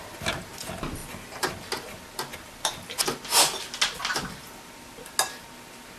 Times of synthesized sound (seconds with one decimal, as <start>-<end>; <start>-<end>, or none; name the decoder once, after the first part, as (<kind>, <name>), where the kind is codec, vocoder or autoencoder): 1.0-1.5 (vocoder, BigVGAN v2)